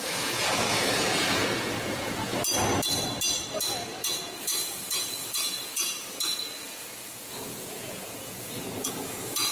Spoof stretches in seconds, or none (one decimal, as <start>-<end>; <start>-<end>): 0.0-2.3; 3.5-9.5